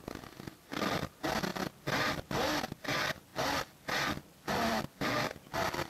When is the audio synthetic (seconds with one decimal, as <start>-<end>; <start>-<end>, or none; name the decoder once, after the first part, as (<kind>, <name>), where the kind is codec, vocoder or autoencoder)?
none